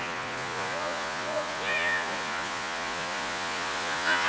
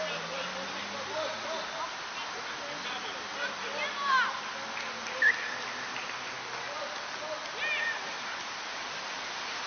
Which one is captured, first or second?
second